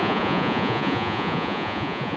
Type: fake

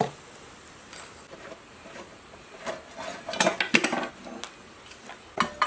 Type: real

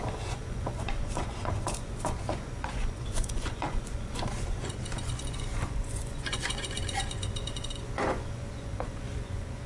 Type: fake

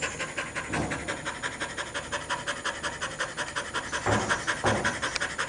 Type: real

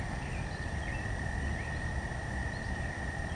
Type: real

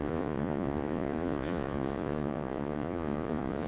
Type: fake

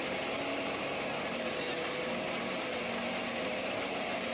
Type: real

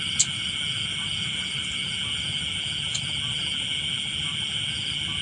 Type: real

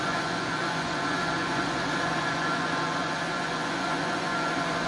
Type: fake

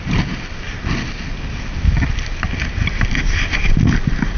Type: real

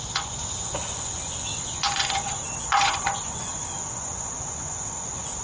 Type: fake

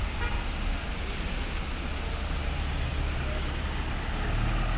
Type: real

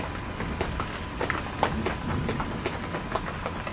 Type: real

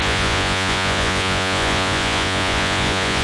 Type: fake